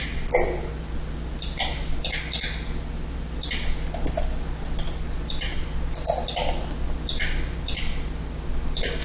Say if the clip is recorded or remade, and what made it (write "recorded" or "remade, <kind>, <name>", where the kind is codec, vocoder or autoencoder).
recorded